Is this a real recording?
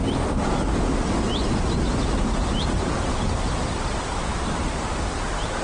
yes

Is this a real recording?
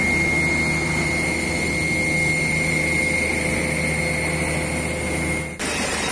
yes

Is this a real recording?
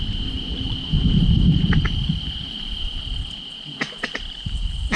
yes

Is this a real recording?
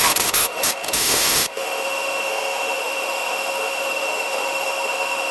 no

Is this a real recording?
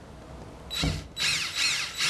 yes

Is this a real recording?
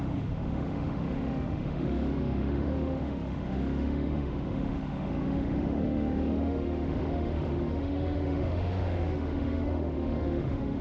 no